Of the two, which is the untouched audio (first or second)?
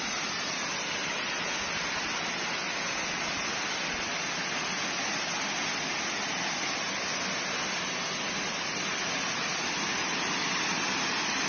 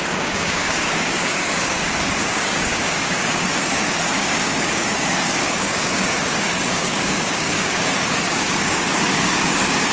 first